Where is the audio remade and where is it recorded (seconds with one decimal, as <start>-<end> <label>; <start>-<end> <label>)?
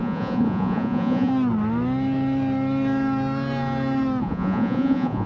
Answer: 0.0-1.3 remade; 1.3-4.2 recorded; 4.2-5.3 remade